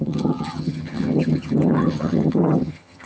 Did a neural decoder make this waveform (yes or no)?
yes